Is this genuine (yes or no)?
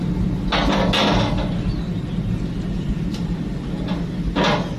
yes